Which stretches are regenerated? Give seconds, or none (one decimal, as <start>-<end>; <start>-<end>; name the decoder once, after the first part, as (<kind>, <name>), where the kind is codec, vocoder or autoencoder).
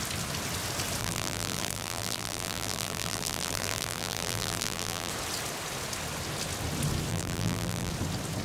1.0-5.1 (vocoder, BigVGAN v2); 7.1-7.9